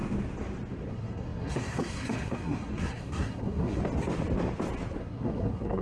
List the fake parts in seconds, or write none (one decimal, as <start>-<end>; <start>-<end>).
0.9-3.8; 5.0-5.8